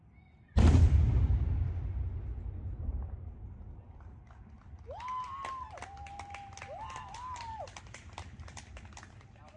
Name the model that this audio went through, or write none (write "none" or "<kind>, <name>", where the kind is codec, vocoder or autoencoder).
none